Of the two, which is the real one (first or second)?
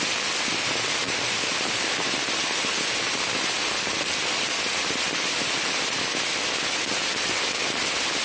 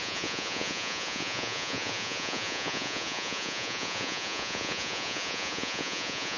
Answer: first